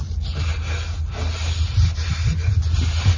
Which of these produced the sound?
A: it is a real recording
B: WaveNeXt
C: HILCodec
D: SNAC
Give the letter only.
A